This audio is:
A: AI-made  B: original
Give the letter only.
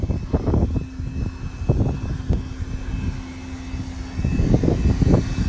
B